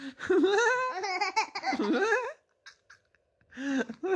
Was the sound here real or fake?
real